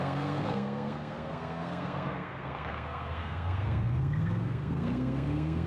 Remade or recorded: remade